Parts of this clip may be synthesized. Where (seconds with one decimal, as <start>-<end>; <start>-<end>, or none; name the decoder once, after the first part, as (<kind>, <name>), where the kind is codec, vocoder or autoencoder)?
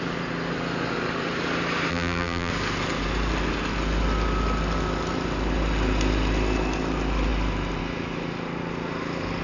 1.9-2.5 (vocoder, BigVGAN v2)